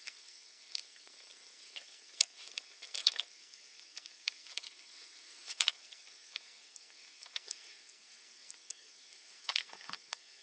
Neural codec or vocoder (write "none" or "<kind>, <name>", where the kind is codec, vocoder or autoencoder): codec, SNAC